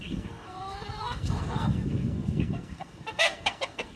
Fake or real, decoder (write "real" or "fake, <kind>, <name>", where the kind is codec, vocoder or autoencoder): fake, codec, SNAC